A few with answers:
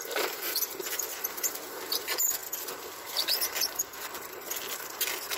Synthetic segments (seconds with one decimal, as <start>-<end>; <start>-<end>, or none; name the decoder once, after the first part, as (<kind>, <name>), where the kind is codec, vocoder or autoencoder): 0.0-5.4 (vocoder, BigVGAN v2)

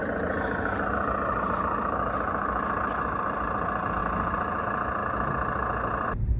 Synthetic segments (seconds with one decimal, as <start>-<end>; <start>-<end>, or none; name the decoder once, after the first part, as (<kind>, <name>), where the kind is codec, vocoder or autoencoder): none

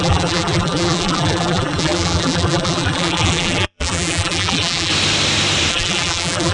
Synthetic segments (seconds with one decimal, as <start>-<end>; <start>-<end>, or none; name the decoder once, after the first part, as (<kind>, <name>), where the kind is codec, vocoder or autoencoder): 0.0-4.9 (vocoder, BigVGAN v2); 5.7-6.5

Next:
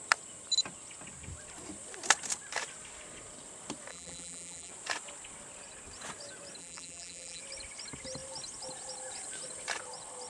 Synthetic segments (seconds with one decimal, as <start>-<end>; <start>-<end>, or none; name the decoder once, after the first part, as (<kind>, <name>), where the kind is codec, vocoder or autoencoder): 3.9-4.7 (vocoder, BigVGAN v2); 6.6-7.4

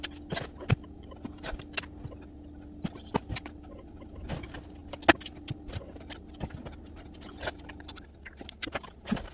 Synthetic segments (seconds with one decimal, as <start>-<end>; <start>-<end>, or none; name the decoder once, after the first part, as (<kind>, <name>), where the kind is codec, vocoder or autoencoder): none